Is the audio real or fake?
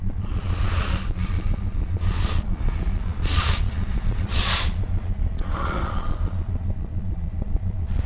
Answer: fake